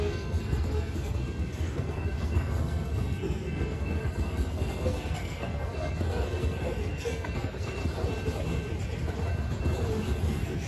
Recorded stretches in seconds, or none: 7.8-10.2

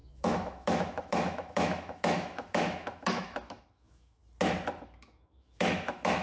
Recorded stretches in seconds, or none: 4.2-4.8

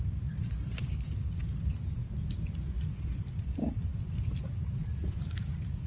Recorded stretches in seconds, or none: 0.0-0.8; 1.4-5.9

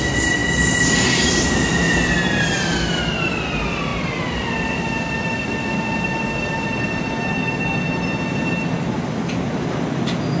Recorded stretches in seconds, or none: 0.0-10.4

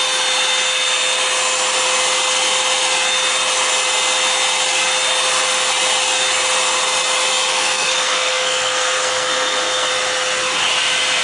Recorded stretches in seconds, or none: 0.0-7.5; 9.9-11.2